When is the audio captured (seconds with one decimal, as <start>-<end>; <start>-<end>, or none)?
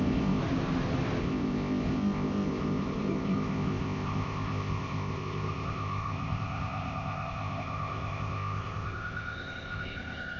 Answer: 0.4-1.2